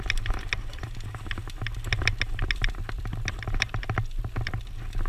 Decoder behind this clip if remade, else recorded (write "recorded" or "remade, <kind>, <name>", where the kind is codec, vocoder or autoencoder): recorded